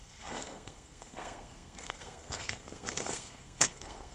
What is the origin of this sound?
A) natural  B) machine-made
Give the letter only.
B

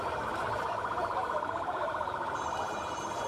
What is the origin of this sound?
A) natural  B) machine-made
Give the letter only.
B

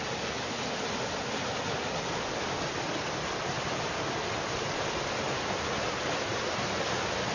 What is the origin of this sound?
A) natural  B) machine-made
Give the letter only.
A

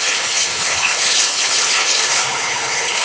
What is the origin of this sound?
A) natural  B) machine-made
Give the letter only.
B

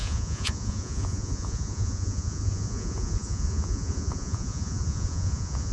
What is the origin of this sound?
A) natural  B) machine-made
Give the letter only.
B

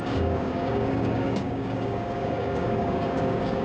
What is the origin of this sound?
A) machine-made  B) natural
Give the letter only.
A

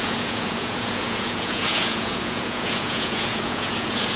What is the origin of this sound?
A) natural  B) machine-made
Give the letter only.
B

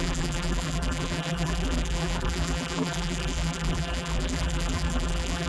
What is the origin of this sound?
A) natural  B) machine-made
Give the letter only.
B